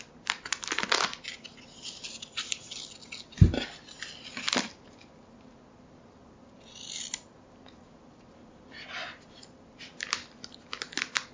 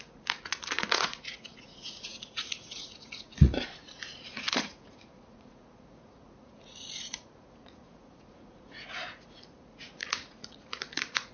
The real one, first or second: first